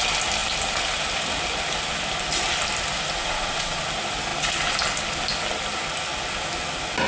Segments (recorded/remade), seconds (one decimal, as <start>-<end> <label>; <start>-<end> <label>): 0.0-3.2 recorded; 3.2-3.8 remade; 3.8-7.1 recorded